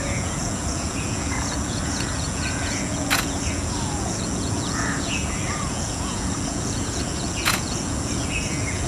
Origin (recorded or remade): remade